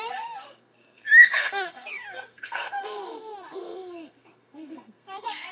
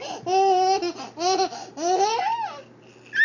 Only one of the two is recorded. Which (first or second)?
second